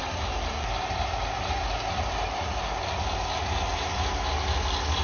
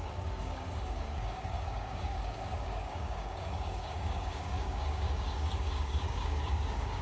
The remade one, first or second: second